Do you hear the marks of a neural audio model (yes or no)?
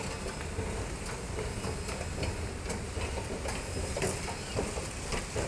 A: no